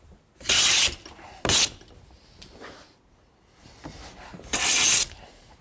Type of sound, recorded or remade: recorded